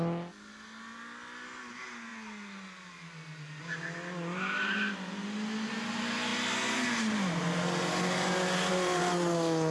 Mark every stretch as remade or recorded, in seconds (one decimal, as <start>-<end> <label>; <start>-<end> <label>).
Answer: 0.0-9.7 recorded